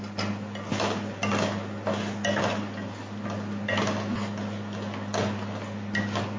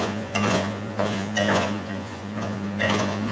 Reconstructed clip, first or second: second